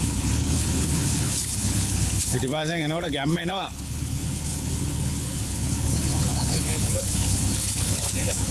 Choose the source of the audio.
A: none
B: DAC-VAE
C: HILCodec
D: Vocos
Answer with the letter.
C